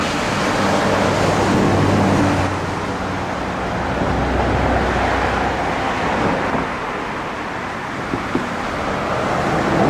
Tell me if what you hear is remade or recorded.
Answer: recorded